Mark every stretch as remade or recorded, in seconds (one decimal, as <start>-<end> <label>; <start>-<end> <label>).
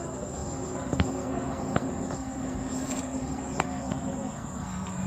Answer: 0.0-5.1 remade